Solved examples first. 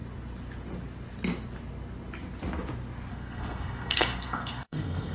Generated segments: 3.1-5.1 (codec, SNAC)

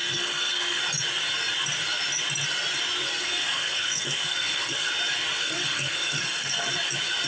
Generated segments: 0.0-0.8 (codec, SNAC); 3.2-4.9; 5.4-6.7

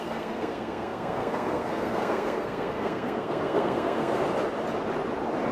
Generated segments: 0.0-4.2 (codec, SNAC)

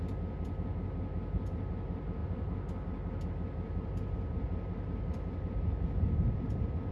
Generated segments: none

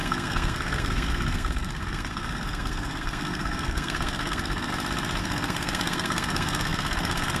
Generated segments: 0.0-4.7 (codec, SNAC); 5.2-7.4

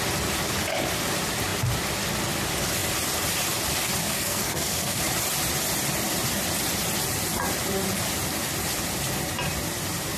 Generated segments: 4.0-5.0 (codec, SNAC)

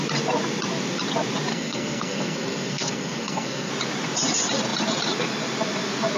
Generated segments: 1.5-3.7 (codec, SNAC)